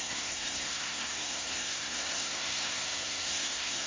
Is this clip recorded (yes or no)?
no